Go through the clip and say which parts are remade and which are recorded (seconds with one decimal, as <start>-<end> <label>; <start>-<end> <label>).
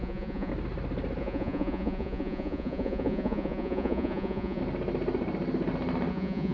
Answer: 0.0-0.5 remade; 0.5-1.2 recorded; 1.2-4.6 remade; 4.6-6.1 recorded; 6.1-6.5 remade